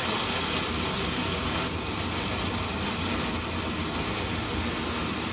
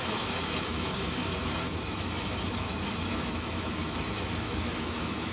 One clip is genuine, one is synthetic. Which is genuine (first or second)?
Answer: first